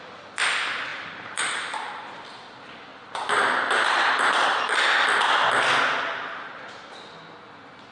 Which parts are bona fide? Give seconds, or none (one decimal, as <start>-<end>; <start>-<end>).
0.0-0.9; 1.9-2.9; 4.6-7.9